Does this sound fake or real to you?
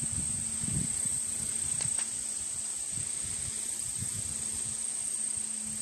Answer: real